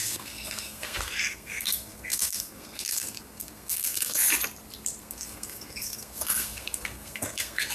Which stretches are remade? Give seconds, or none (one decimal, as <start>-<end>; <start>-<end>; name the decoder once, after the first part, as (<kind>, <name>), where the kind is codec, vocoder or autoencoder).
0.0-4.2 (codec, SNAC); 5.0-7.7